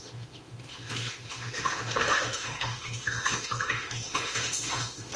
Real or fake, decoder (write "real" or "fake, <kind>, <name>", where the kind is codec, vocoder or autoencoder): fake, autoencoder, DAC-VAE